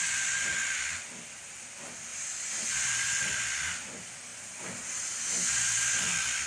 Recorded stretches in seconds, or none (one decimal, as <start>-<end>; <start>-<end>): 0.0-2.1; 3.2-6.5